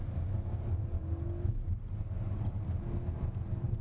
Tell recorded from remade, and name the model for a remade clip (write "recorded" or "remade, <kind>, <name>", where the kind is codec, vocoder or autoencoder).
recorded